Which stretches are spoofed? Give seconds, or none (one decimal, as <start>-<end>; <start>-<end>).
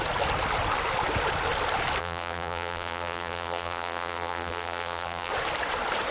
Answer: 2.0-5.3